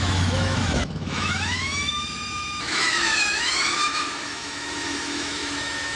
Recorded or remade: remade